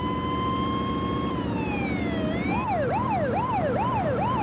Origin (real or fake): real